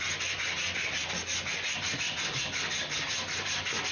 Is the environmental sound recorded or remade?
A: recorded